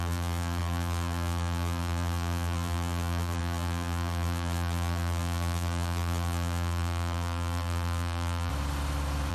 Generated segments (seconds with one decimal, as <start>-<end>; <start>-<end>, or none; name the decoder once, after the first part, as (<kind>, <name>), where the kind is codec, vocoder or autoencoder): 0.0-8.5 (vocoder, BigVGAN v2)